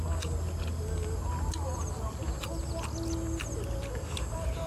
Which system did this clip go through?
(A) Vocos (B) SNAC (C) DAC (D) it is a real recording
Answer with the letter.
D